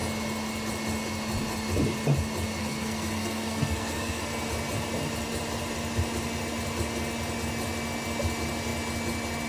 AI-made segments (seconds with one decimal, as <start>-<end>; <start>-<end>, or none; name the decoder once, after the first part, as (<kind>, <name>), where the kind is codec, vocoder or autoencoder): 2.6-4.2 (codec, SNAC)